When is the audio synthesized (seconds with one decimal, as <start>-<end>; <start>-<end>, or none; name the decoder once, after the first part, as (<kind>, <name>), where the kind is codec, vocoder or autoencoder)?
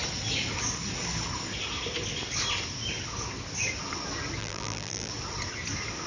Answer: 4.4-5.1 (vocoder, BigVGAN v2)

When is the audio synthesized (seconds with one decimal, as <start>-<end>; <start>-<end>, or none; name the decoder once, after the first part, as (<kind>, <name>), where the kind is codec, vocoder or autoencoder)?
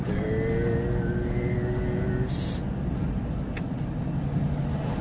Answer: none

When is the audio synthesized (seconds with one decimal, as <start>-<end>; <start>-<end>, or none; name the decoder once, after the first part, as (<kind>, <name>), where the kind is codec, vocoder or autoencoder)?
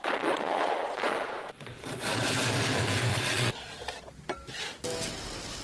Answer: 0.0-2.3 (vocoder, Vocos); 3.1-3.6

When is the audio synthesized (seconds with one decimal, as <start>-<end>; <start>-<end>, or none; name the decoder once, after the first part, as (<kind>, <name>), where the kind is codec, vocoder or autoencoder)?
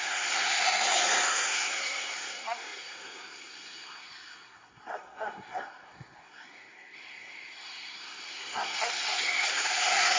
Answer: 0.0-10.2 (codec, SNAC)